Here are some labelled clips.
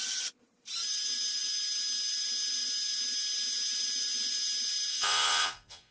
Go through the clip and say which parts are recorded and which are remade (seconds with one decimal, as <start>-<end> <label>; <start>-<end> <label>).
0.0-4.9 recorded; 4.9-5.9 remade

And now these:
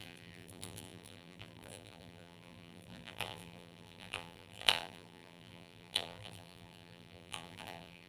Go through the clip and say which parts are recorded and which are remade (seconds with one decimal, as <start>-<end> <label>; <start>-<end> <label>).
0.0-8.1 remade

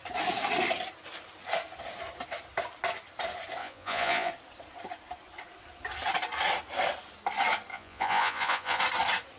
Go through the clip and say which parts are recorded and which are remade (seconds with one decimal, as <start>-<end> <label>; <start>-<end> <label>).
0.0-3.6 recorded; 3.6-4.3 remade; 4.3-7.7 recorded; 7.7-8.8 remade; 8.8-9.4 recorded

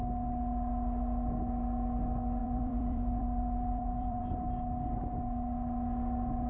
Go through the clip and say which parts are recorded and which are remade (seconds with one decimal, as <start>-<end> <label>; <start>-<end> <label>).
0.0-2.4 recorded; 2.4-4.3 remade; 4.3-6.5 recorded

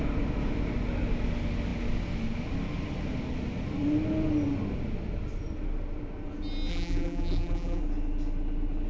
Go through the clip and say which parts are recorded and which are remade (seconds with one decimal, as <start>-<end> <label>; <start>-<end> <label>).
0.0-6.7 recorded; 6.7-7.8 remade; 7.8-8.9 recorded

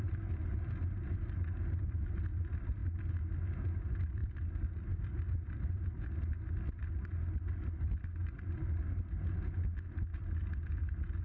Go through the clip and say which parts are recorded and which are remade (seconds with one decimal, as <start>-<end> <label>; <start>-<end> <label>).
0.0-2.8 remade; 2.8-3.8 recorded; 3.8-6.8 remade; 6.8-7.4 recorded; 7.4-8.2 remade; 8.2-10.7 recorded; 10.7-11.2 remade

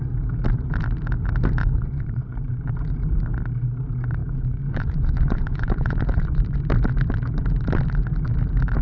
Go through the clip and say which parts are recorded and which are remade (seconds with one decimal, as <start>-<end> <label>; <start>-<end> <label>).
0.0-1.6 recorded; 1.6-2.6 remade; 2.6-4.2 recorded; 4.2-6.6 remade; 6.6-8.8 recorded

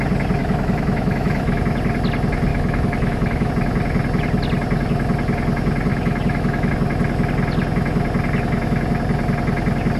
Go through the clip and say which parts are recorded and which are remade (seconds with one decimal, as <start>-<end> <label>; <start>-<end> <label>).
0.0-0.4 recorded; 0.4-1.6 remade; 1.6-2.5 recorded; 2.5-3.5 remade; 3.5-5.9 recorded; 5.9-6.7 remade; 6.7-10.0 recorded